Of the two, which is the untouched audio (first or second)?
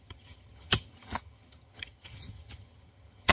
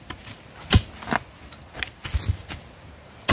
second